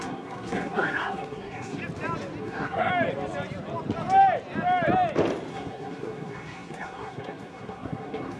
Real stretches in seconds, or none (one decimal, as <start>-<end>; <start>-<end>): 1.8-2.4; 2.9-5.5